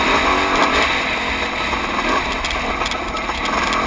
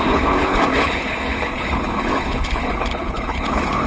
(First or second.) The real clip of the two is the first